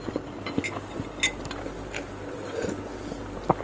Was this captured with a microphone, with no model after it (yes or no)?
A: yes